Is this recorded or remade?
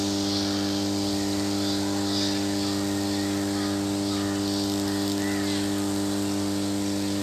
recorded